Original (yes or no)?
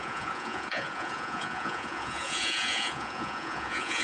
no